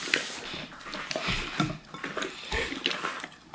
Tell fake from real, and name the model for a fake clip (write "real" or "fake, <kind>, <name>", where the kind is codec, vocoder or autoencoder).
real